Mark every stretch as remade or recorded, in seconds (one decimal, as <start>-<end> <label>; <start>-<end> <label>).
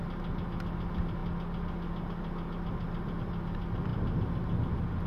0.0-5.1 recorded